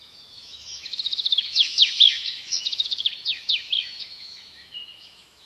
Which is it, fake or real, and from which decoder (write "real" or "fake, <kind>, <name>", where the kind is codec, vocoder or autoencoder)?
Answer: fake, autoencoder, DAC-VAE